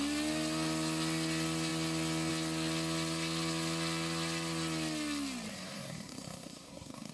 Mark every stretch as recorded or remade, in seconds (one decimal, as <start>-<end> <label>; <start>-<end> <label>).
0.0-5.5 recorded; 5.5-7.1 remade